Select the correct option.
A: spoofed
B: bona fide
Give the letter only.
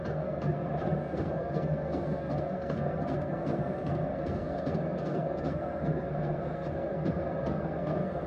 A